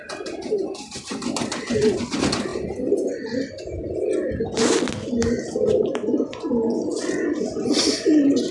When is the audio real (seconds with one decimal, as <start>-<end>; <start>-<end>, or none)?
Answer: 0.0-8.5